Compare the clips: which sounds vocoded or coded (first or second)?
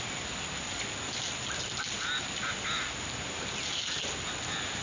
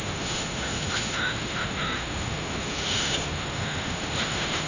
second